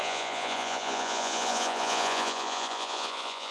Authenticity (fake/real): fake